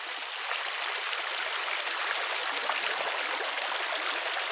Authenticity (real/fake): real